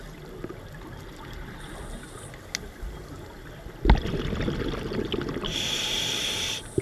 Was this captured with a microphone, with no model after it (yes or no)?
yes